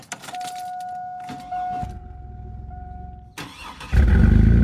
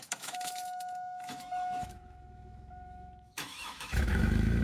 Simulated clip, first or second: second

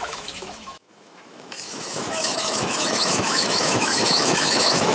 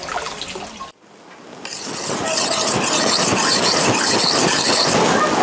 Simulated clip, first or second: first